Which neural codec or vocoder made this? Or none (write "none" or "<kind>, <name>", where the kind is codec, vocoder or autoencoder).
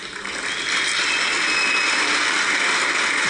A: none